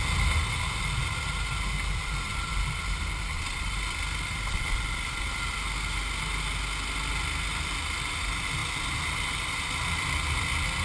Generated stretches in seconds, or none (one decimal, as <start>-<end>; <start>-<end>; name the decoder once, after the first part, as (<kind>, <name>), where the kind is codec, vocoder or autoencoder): none